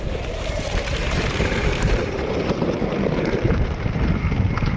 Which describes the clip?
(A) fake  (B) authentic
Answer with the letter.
A